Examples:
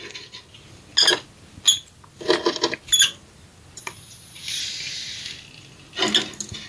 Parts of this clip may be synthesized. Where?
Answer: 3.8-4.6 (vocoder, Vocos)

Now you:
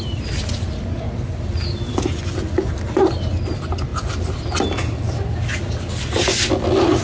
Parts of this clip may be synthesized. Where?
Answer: 3.9-6.0 (vocoder, BigVGAN v2)

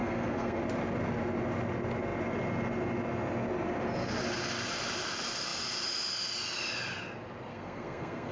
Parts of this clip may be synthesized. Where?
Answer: 0.0-0.6 (codec, SNAC); 7.5-8.3

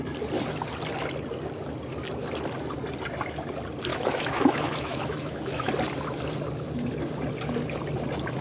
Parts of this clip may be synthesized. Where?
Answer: 3.9-5.7 (autoencoder, DAC-VAE)

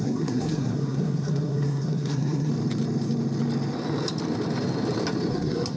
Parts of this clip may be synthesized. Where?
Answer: 0.0-2.5 (codec, SNAC); 5.3-5.8